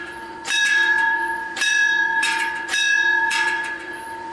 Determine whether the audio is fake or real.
fake